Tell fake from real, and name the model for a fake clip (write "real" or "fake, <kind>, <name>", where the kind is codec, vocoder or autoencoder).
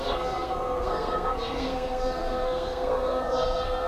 fake, codec, SNAC